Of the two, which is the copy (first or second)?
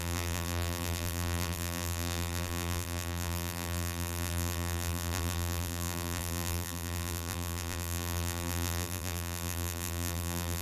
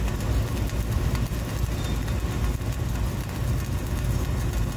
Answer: first